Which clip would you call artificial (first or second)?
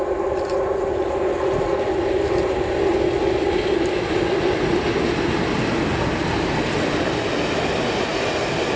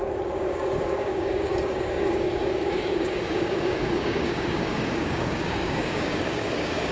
second